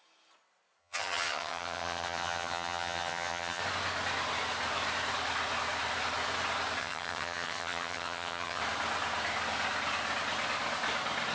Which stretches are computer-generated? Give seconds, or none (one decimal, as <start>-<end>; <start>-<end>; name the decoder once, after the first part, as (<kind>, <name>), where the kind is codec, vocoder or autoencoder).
0.8-3.6 (vocoder, HiFi-GAN); 6.8-8.6